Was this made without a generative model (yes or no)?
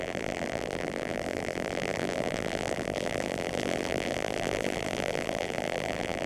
no